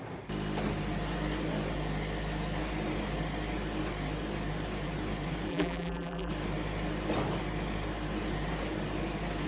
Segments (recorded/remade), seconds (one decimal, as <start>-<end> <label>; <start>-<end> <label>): 0.0-5.5 recorded; 5.5-6.3 remade; 6.3-9.5 recorded